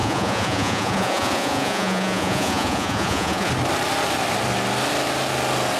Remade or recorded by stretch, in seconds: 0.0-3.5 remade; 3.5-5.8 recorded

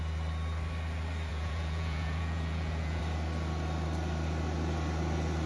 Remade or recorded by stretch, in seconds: 0.0-1.3 recorded; 1.3-3.0 remade; 3.0-5.5 recorded

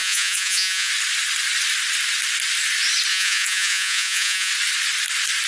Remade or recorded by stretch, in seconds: 0.0-0.9 remade; 0.9-3.1 recorded; 3.1-4.5 remade; 4.5-5.5 recorded

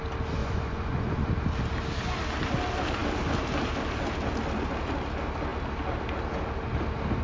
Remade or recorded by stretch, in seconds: 0.0-0.4 recorded; 0.4-1.3 remade; 1.3-7.2 recorded

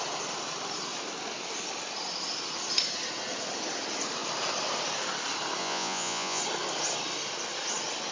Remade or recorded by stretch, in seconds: 0.0-5.6 recorded; 5.6-6.4 remade; 6.4-8.1 recorded